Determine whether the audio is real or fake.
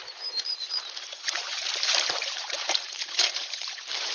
fake